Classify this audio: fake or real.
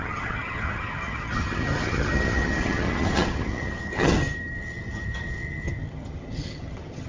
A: fake